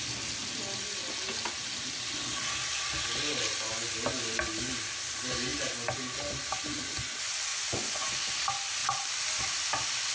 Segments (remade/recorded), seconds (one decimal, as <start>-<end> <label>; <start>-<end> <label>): 0.0-7.5 recorded; 7.5-8.3 remade; 8.3-10.1 recorded